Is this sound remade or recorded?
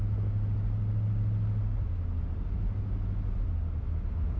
recorded